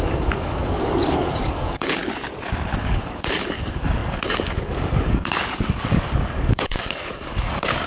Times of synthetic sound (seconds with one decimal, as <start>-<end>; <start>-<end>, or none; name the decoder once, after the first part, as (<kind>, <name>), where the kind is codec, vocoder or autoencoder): 0.0-2.0 (codec, DAC); 2.8-7.9